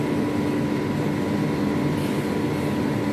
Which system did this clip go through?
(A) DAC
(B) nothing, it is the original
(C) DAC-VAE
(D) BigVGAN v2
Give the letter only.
B